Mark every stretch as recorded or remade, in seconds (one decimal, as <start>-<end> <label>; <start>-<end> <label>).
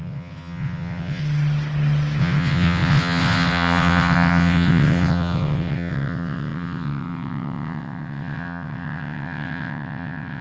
0.0-1.2 remade; 1.2-2.2 recorded; 2.2-10.4 remade